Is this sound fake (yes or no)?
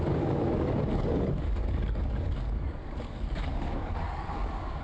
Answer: yes